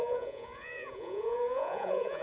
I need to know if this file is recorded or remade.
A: remade